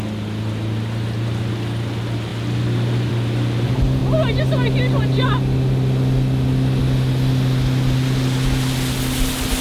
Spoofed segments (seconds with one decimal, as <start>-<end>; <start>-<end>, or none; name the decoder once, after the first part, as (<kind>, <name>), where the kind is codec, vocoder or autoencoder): none